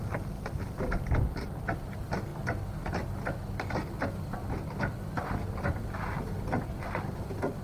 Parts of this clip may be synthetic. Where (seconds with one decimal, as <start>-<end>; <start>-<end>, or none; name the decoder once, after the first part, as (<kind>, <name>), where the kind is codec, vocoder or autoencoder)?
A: none